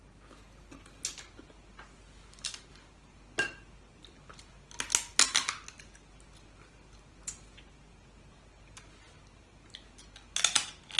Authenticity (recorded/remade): recorded